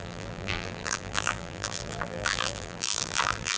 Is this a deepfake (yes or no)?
yes